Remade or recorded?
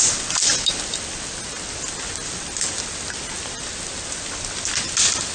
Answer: recorded